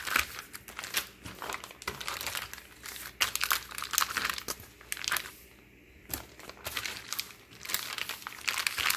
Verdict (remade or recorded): recorded